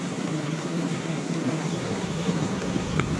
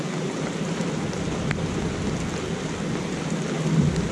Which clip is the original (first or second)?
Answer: second